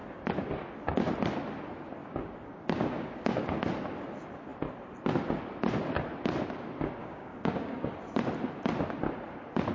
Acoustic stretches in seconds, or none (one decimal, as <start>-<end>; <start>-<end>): 0.0-2.0; 3.7-7.0; 7.9-9.7